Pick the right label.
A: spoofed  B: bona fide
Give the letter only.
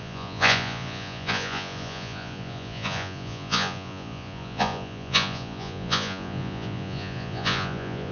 A